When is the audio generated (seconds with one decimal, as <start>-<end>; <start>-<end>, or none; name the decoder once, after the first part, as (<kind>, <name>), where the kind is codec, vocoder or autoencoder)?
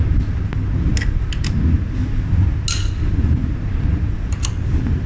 none